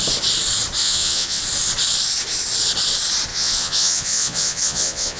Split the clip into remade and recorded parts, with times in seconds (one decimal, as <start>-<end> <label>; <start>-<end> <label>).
0.0-0.8 recorded; 0.8-1.4 remade; 1.4-3.3 recorded; 3.3-5.2 remade